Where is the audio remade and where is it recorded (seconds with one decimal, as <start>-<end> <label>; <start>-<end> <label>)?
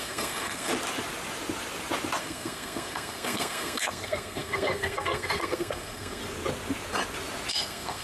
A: 0.0-0.7 remade; 0.7-2.2 recorded; 2.2-6.2 remade; 6.2-7.5 recorded; 7.5-8.0 remade